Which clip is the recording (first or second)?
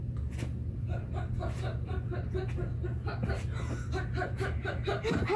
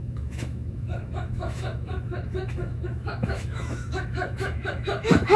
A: first